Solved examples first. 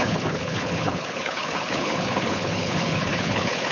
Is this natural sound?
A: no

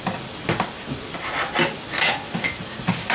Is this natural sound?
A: yes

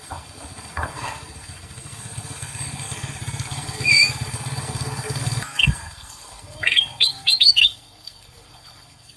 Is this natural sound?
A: no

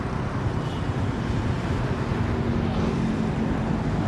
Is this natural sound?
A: yes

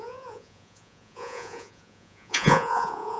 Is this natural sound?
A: no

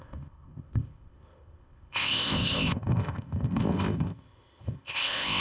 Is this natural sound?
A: no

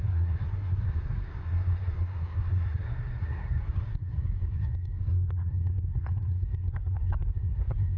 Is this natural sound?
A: no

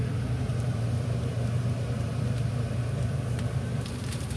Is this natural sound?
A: no